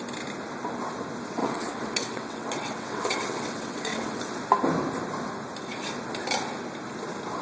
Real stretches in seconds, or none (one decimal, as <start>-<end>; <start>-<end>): 0.0-1.4; 4.2-7.4

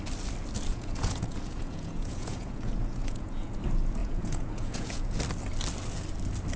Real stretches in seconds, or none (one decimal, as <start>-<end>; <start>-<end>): 0.0-0.7; 3.6-4.0; 5.2-6.6

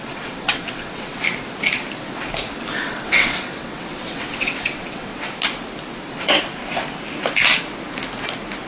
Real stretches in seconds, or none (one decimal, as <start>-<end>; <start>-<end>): 1.2-2.8; 5.1-6.1; 6.6-8.7

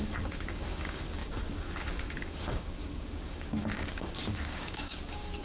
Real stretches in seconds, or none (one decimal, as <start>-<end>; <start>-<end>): none

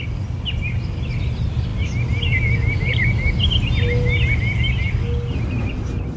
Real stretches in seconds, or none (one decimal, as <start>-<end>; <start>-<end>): 0.0-6.2

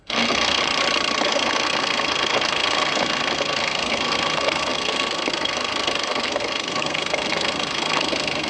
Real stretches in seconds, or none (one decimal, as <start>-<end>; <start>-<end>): 0.6-1.3

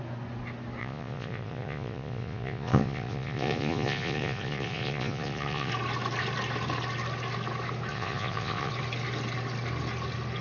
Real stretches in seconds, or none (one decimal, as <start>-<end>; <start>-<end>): 0.0-0.8; 5.7-7.9; 8.7-10.4

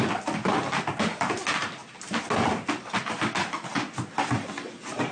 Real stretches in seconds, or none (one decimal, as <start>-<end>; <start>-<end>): 0.0-5.1